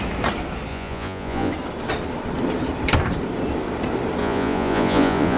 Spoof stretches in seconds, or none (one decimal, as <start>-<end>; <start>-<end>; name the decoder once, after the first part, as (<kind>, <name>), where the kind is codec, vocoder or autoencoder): 0.7-1.5 (vocoder, Vocos); 4.2-5.4